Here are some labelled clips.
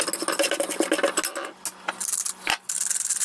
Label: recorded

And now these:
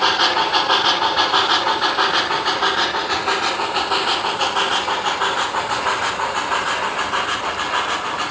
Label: recorded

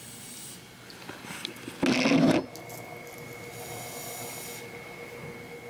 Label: recorded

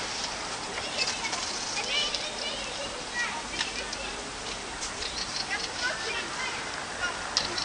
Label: recorded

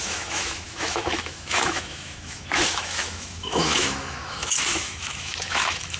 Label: remade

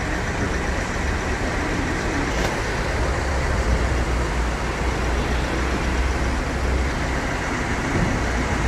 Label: recorded